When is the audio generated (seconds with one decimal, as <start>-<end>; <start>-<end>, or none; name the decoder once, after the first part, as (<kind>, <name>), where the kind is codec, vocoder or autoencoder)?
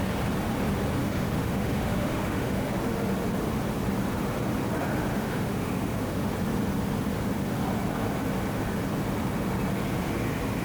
1.0-2.7 (autoencoder, DAC-VAE); 5.1-6.3